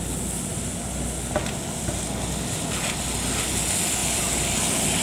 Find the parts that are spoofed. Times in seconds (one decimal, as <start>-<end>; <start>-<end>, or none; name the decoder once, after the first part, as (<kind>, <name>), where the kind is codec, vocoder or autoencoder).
none